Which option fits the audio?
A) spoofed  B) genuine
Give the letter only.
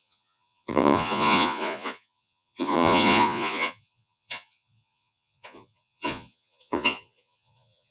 A